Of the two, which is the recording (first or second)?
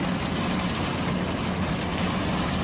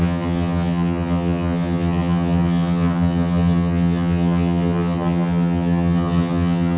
first